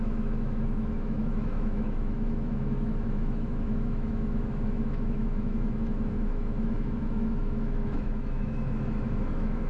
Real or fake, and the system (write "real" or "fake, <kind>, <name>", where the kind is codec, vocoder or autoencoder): fake, autoencoder, DAC-VAE